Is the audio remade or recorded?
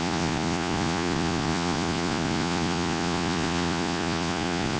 remade